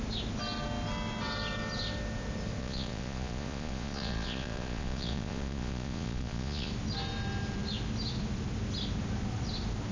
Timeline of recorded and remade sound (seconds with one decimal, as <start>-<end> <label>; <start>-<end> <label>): 0.0-2.6 recorded; 2.6-6.7 remade; 6.7-9.9 recorded